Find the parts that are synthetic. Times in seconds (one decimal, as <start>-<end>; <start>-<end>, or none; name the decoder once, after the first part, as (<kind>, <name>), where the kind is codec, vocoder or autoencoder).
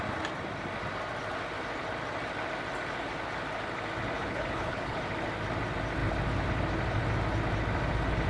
4.2-5.0 (codec, HILCodec)